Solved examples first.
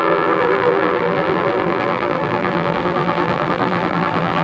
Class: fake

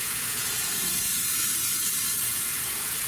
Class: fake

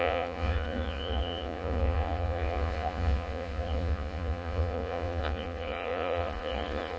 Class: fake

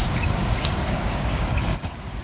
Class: fake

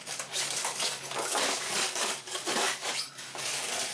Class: fake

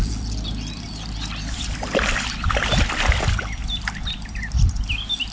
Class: fake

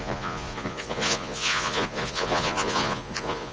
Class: fake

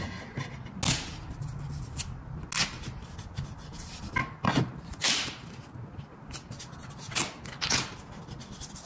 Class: real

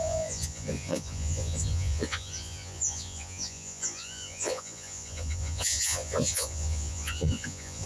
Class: fake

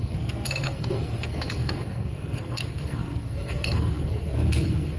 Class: fake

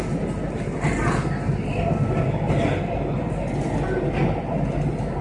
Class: real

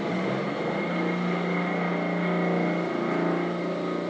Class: real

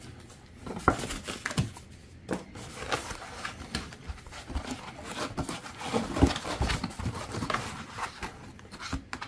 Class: real